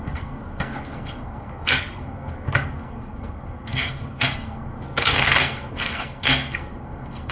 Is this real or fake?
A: fake